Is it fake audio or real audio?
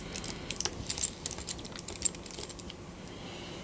real